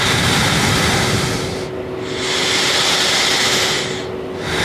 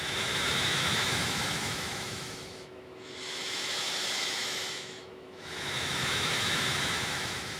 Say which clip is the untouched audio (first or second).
first